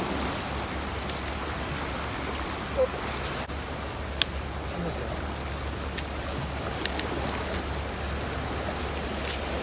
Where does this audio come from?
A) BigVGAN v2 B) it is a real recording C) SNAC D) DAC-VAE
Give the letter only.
B